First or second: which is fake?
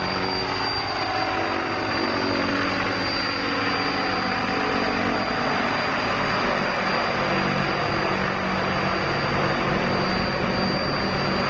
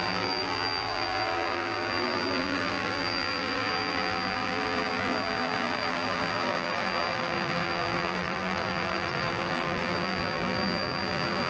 second